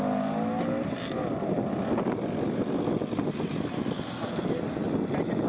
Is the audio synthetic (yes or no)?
no